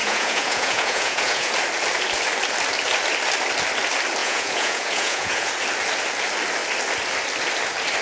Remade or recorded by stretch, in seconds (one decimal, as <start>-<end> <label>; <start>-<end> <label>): 0.0-1.5 remade; 1.5-4.2 recorded; 4.2-5.5 remade; 5.5-8.0 recorded